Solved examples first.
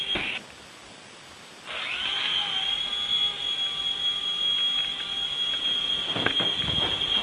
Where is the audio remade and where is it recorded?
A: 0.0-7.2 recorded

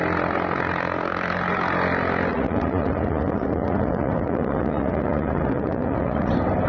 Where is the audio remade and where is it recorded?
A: 0.0-2.3 recorded; 2.3-6.3 remade; 6.3-6.7 recorded